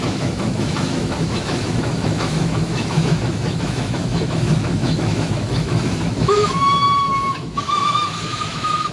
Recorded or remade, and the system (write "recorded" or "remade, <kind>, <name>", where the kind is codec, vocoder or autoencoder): remade, autoencoder, DAC-VAE